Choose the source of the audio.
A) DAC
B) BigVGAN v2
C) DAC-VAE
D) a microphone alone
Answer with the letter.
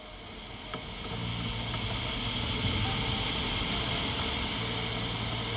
D